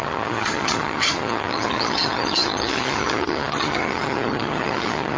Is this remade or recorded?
remade